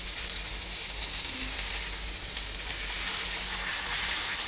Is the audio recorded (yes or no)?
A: yes